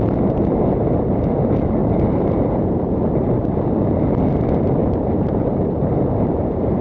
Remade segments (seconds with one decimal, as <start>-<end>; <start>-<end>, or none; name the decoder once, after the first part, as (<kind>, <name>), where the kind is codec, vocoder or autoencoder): 1.8-3.6 (vocoder, BigVGAN v2); 4.8-6.8